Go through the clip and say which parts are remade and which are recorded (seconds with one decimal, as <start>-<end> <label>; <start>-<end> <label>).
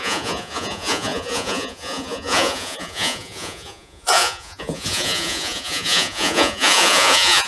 0.0-7.5 remade